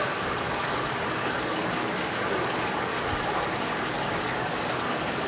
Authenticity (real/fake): fake